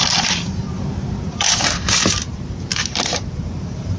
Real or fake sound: fake